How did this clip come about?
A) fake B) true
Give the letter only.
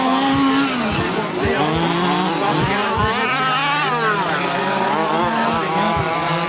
B